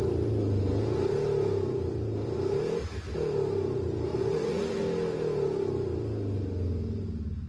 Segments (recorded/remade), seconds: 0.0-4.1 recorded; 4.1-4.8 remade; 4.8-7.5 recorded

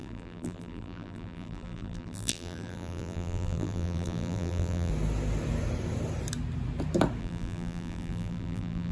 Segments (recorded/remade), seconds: 0.0-4.9 remade; 4.9-7.2 recorded; 7.2-8.9 remade